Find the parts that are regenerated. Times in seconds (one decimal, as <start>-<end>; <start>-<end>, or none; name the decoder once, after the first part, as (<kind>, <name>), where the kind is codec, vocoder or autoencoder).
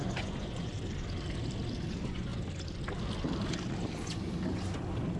0.0-0.7 (vocoder, Vocos); 1.9-2.3